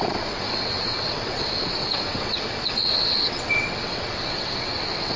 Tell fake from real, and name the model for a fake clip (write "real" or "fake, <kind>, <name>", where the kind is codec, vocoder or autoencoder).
fake, vocoder, WaveNeXt